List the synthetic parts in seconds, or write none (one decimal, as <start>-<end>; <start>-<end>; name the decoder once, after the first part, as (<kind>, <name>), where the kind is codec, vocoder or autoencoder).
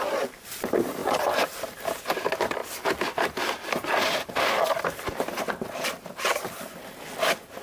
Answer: none